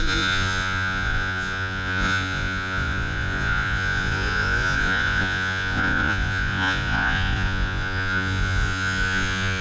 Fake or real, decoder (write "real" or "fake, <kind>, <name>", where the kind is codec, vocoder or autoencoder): fake, vocoder, Vocos